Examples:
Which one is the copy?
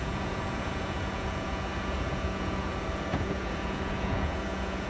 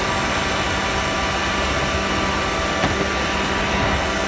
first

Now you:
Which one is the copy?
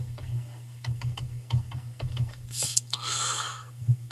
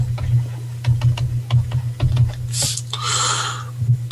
first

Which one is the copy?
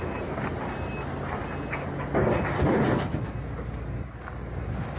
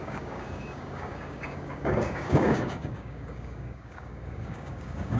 second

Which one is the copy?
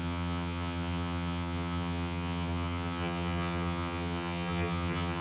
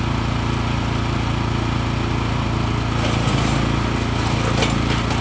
first